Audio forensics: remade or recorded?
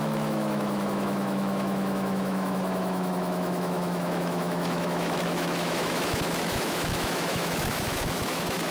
remade